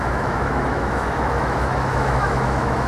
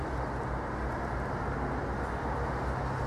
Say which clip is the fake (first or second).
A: first